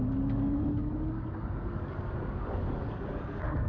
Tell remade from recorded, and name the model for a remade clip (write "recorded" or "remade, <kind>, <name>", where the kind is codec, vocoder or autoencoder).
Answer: remade, codec, DAC